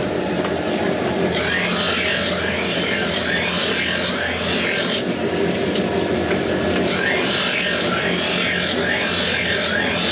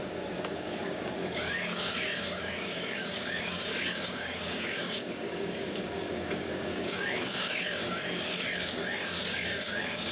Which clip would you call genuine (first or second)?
first